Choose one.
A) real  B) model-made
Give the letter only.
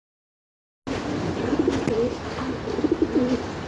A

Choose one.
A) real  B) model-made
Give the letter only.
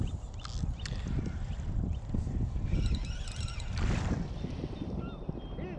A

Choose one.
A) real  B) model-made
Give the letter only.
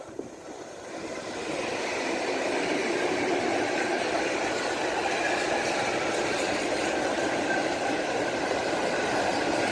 B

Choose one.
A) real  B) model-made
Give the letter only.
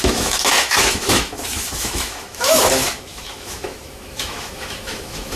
B